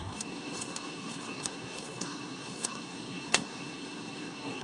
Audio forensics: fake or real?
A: fake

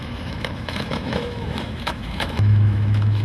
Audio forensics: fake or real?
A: fake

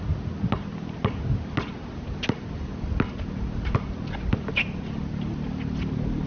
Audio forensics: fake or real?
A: real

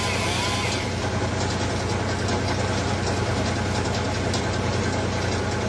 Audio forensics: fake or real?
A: real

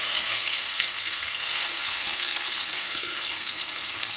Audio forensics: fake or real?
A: fake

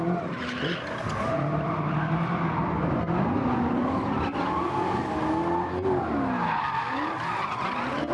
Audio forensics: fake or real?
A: real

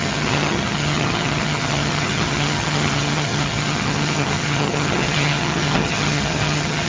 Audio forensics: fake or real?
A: fake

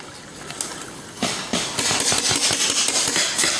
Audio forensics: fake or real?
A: real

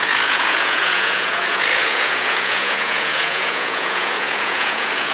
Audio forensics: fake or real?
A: fake